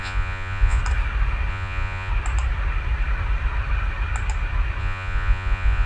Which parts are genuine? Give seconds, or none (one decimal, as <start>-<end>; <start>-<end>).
0.8-1.5; 2.1-4.8